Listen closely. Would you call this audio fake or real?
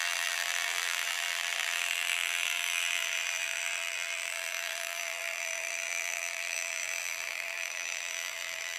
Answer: fake